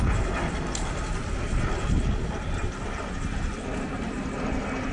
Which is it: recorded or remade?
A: recorded